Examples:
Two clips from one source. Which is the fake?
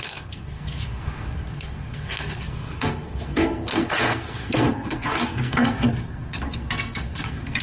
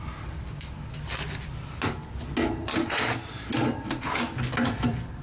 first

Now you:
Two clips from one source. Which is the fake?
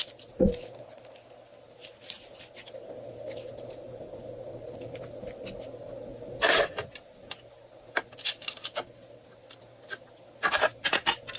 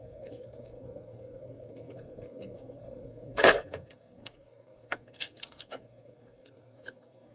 second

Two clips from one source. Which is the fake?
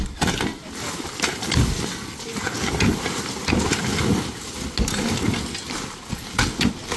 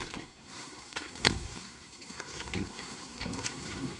second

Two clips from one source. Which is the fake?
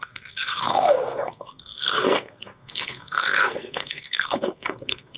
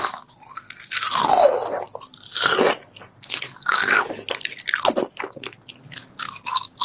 first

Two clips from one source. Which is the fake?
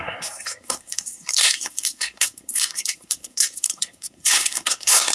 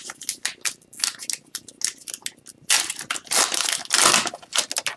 first